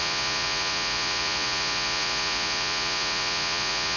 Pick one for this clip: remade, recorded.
remade